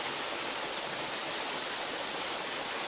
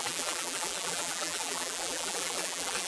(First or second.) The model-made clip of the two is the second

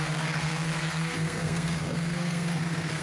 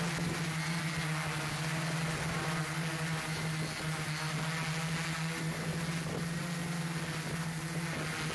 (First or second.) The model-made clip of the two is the first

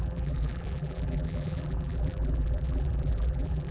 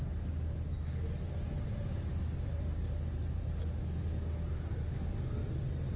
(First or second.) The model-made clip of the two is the first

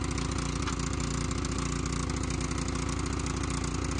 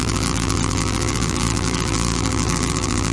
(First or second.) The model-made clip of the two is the second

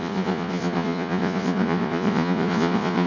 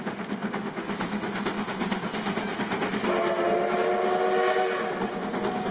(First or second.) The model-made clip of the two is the first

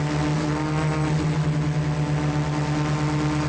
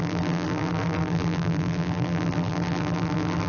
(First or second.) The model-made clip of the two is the second